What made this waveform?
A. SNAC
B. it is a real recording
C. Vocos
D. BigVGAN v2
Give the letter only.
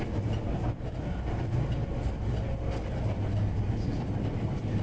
B